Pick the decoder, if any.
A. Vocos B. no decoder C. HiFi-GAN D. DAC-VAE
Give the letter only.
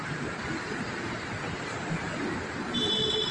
B